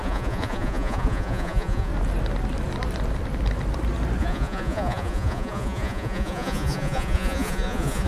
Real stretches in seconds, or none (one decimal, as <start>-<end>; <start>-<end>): 1.9-4.2